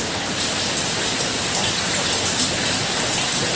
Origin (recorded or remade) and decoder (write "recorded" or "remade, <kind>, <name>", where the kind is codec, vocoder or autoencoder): recorded